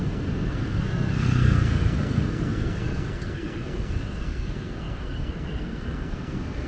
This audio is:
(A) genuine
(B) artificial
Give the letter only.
B